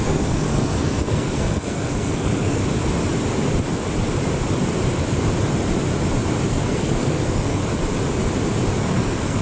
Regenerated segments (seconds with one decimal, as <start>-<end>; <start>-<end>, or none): 0.0-2.6; 6.5-7.6; 8.8-9.4